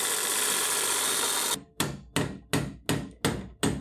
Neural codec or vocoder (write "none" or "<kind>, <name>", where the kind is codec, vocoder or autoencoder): none